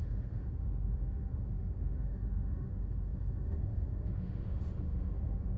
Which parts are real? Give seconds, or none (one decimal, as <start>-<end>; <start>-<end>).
none